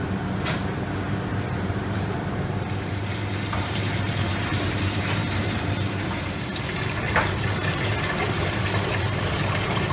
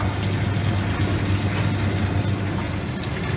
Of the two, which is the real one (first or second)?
second